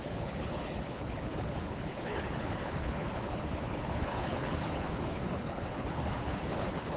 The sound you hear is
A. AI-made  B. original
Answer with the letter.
A